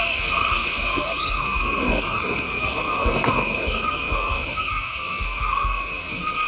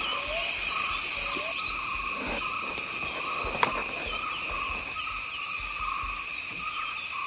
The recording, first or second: second